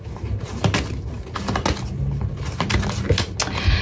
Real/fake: real